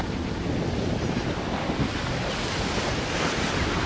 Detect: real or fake real